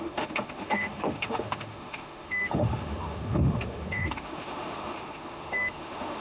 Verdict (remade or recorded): remade